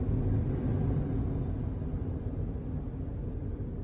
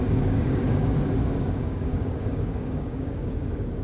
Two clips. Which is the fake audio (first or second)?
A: second